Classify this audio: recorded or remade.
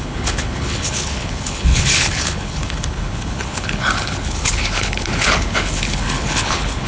remade